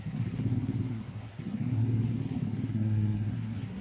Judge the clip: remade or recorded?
remade